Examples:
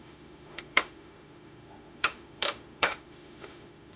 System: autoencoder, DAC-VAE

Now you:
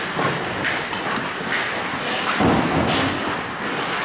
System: none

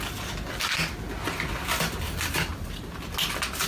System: none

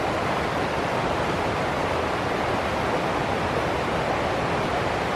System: none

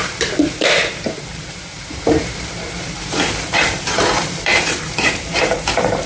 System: vocoder, BigVGAN v2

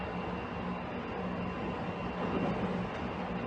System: none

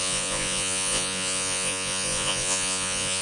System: vocoder, Vocos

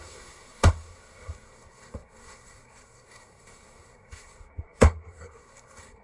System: codec, SNAC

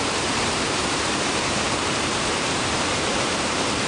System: vocoder, BigVGAN v2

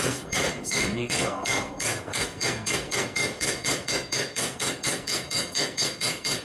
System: codec, SNAC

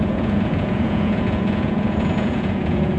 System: vocoder, Vocos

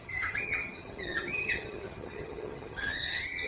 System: vocoder, HiFi-GAN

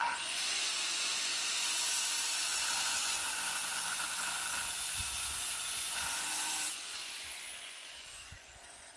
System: vocoder, Vocos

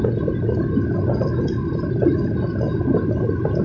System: none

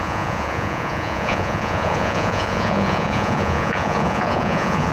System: vocoder, Vocos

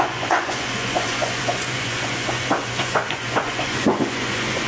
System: vocoder, Vocos